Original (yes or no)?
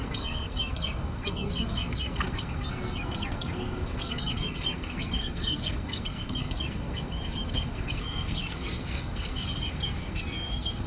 no